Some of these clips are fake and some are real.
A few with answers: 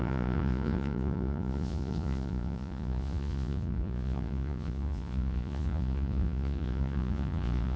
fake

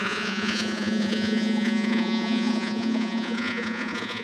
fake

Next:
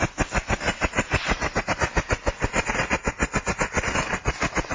real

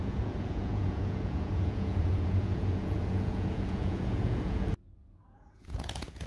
fake